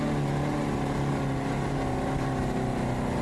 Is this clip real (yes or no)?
yes